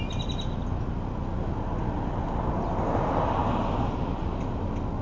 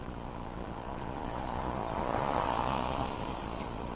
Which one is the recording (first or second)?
first